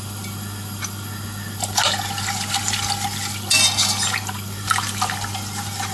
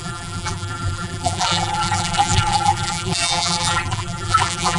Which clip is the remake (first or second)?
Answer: second